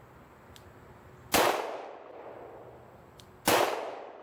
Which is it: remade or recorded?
recorded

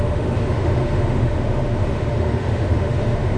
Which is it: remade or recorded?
remade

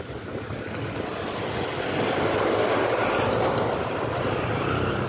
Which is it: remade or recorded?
remade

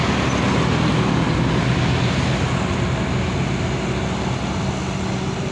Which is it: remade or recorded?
recorded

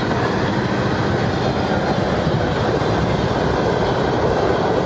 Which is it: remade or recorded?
recorded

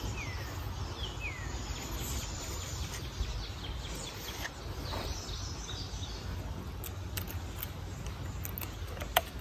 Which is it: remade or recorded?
recorded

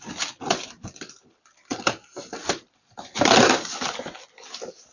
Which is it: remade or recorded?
remade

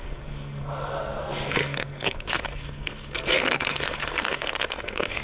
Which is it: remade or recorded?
remade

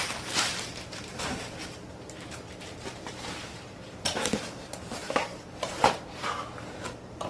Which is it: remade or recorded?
remade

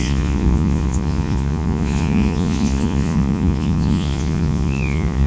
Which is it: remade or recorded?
remade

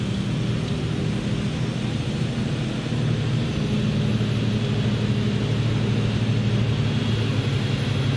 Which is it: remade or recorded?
recorded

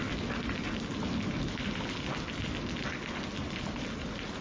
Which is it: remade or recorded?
recorded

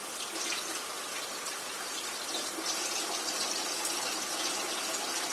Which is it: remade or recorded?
recorded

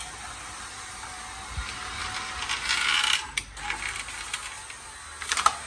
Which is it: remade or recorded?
recorded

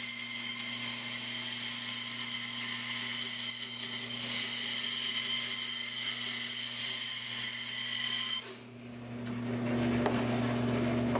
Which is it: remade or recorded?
recorded